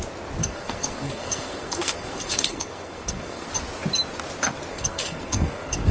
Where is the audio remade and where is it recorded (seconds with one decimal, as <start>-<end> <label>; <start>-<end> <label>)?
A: 0.0-0.4 recorded; 0.4-3.5 remade; 3.5-4.7 recorded; 4.7-5.9 remade